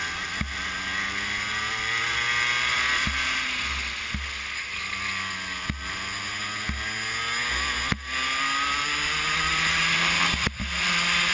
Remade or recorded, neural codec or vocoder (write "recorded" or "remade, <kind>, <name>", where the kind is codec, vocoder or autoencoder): recorded